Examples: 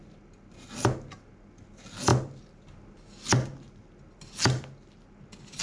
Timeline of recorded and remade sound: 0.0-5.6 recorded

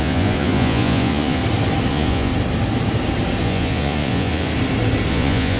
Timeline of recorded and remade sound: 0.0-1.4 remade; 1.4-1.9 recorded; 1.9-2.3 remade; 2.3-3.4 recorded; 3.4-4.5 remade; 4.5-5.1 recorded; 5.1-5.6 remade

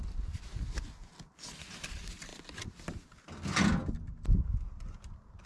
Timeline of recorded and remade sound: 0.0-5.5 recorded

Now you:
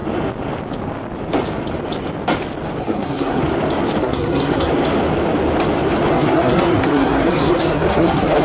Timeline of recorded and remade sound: 0.0-2.8 recorded; 2.8-3.4 remade; 3.4-4.0 recorded; 4.0-4.7 remade; 4.7-6.1 recorded; 6.1-8.4 remade